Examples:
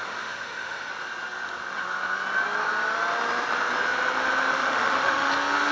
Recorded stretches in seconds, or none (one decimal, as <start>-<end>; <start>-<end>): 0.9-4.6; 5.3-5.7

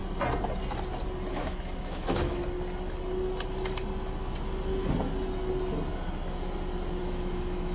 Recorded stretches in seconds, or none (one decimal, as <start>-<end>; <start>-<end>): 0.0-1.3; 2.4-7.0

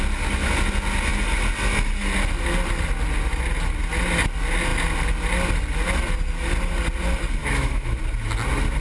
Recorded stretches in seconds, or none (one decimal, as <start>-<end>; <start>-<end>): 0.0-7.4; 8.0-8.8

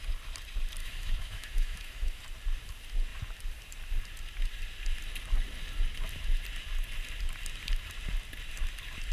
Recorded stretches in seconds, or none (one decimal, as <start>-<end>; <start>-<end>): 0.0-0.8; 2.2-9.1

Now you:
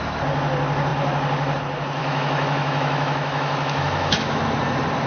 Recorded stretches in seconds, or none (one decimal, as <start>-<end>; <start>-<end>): 0.0-2.0; 4.4-5.1

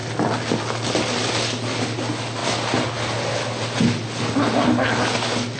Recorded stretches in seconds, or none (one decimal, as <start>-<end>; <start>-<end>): 0.0-5.6

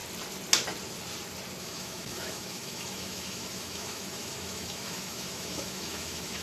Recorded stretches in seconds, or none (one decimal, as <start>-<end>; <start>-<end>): 0.0-1.6